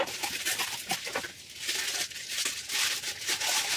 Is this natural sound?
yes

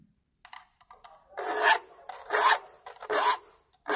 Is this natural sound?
yes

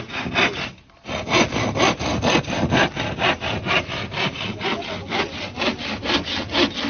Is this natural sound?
yes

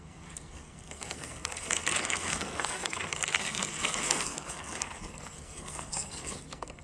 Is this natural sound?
no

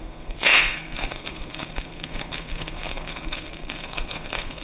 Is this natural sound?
no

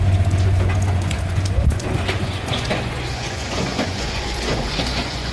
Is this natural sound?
no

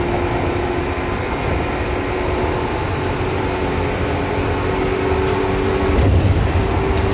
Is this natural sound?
yes